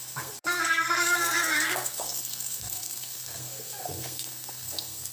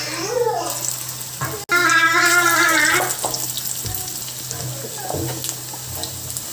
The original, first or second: second